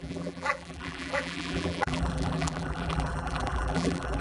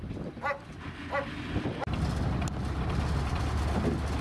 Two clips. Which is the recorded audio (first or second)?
second